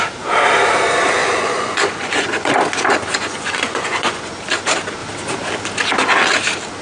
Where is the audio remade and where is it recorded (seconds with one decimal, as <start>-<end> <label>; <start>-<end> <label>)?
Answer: 0.0-1.2 recorded; 1.2-2.5 remade; 2.5-3.1 recorded; 3.1-4.2 remade; 4.2-6.8 recorded